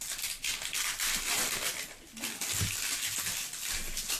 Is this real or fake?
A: real